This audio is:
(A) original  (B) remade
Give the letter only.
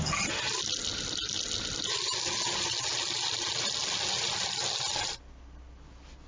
A